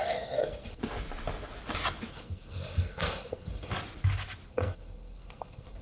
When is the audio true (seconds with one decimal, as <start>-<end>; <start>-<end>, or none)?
0.8-2.1; 3.7-4.5